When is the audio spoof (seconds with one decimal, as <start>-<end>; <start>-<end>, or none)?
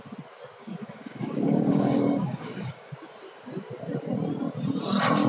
0.6-2.9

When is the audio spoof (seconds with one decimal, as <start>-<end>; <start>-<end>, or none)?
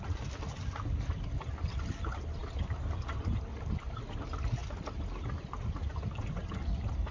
none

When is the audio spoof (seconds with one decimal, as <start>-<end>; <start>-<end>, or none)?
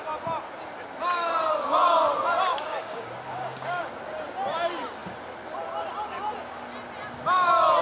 2.5-3.9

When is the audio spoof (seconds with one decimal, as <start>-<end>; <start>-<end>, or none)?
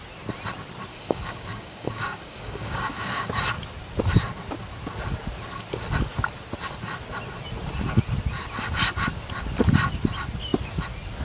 0.9-3.3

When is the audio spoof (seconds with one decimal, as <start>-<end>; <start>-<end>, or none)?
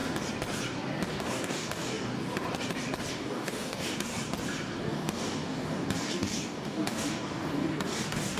1.1-2.1; 3.1-4.1; 4.8-8.4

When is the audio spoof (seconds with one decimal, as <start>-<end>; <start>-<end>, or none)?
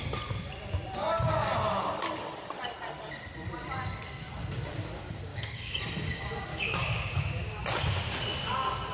5.3-5.8; 6.5-7.5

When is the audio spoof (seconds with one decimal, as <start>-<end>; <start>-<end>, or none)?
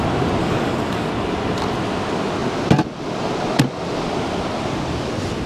0.4-1.1